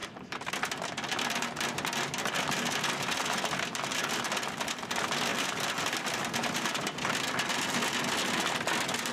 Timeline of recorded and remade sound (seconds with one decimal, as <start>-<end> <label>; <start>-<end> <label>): 0.0-0.5 remade; 0.5-6.4 recorded; 6.4-7.0 remade; 7.0-9.1 recorded